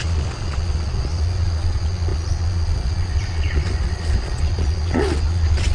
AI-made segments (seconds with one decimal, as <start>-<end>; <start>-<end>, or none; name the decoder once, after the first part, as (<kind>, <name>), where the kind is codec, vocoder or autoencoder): 0.0-5.7 (vocoder, Vocos)